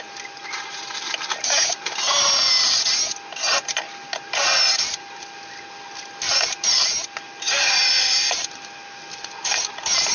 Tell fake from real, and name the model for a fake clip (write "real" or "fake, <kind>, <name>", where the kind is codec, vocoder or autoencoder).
real